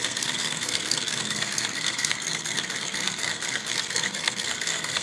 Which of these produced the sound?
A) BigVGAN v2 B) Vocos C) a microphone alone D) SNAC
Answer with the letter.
D